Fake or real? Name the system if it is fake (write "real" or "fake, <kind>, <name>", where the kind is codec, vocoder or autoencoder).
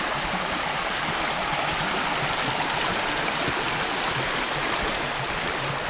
real